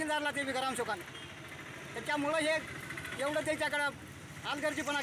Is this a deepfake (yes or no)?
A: no